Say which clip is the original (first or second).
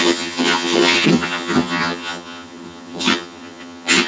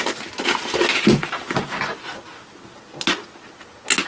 second